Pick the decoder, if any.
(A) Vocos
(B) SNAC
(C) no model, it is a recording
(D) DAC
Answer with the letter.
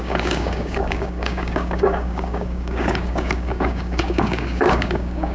D